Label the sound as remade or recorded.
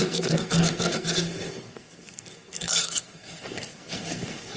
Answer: remade